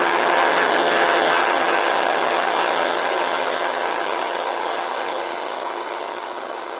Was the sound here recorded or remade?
remade